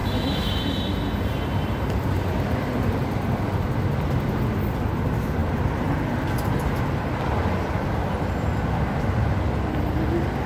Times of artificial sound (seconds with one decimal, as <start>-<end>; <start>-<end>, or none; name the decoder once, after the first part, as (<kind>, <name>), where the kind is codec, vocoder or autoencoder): 0.0-0.6 (autoencoder, DAC-VAE)